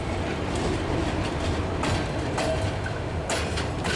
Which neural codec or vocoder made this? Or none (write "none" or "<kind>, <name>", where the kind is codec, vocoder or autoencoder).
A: none